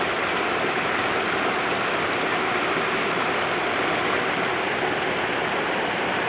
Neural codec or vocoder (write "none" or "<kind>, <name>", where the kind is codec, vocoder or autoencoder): none